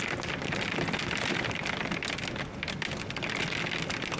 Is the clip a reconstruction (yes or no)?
no